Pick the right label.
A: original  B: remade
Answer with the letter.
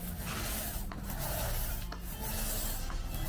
A